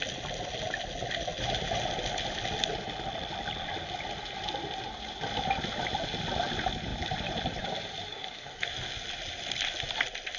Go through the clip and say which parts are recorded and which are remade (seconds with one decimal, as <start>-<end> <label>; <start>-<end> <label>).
0.0-8.1 recorded; 8.1-8.7 remade; 8.7-10.4 recorded

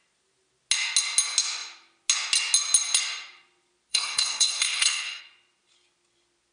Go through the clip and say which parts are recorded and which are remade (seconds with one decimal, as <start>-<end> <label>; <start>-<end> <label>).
0.0-3.9 recorded; 3.9-5.2 remade; 5.2-6.5 recorded

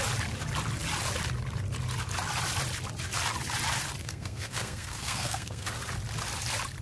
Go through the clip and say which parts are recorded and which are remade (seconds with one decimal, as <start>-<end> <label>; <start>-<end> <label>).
0.0-4.0 recorded; 4.0-5.7 remade; 5.7-6.8 recorded

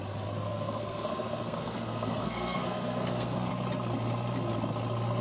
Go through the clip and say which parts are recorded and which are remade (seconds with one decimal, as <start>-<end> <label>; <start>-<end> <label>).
0.0-0.4 recorded; 0.4-3.5 remade; 3.5-5.2 recorded

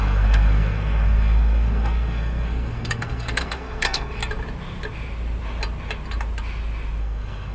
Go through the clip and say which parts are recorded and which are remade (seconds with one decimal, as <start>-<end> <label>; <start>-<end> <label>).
0.0-4.2 remade; 4.2-7.0 recorded; 7.0-7.5 remade

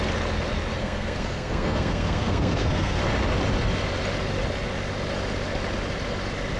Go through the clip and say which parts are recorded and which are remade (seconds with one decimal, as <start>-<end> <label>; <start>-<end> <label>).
0.0-0.7 recorded; 0.7-3.0 remade; 3.0-6.6 recorded